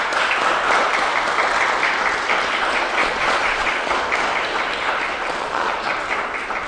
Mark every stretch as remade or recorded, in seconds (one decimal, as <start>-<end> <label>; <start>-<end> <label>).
0.0-3.0 recorded; 3.0-3.9 remade; 3.9-5.3 recorded; 5.3-5.9 remade; 5.9-6.7 recorded